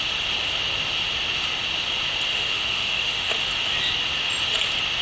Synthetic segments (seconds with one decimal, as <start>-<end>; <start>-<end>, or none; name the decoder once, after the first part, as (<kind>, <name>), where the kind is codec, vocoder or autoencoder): 2.3-3.3 (autoencoder, DAC-VAE)